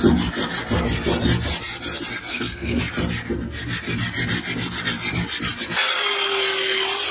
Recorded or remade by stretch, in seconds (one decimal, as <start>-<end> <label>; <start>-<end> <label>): 0.0-2.3 recorded; 2.3-2.8 remade; 2.8-7.1 recorded